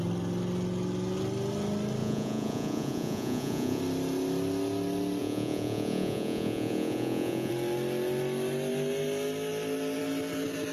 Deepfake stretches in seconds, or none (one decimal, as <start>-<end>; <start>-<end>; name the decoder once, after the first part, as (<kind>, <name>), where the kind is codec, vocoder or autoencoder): 2.0-3.8 (vocoder, Vocos); 5.2-7.5